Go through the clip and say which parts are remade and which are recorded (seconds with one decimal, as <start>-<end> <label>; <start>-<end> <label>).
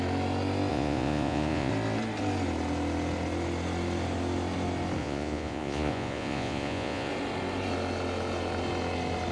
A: 0.0-0.7 recorded; 0.7-1.7 remade; 1.7-5.0 recorded; 5.0-7.1 remade; 7.1-9.3 recorded